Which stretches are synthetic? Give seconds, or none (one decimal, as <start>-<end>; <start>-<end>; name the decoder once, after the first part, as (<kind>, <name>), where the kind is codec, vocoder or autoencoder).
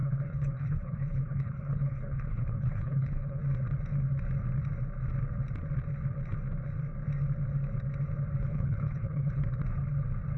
0.0-3.4 (codec, HILCodec); 8.5-9.4